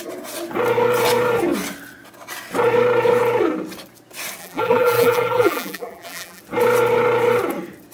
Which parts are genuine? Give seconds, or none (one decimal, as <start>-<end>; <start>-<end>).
0.0-4.4; 6.4-7.9